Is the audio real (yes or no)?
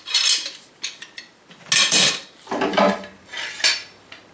yes